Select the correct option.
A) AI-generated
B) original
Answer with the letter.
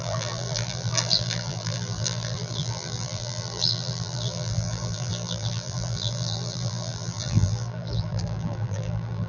A